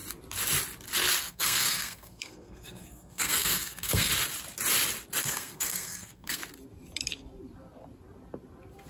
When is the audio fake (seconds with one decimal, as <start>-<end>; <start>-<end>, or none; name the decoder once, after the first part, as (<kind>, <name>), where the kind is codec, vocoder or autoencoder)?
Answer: 1.2-4.1 (codec, SNAC); 5.2-6.4